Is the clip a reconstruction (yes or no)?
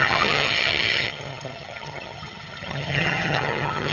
yes